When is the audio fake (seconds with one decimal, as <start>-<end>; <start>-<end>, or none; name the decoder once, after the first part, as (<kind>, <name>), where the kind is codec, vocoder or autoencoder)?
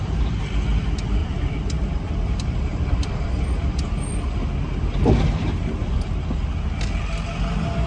1.2-3.2 (vocoder, BigVGAN v2)